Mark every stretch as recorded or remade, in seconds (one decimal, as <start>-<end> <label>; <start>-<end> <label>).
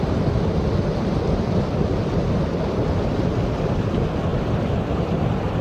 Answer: 0.0-5.6 recorded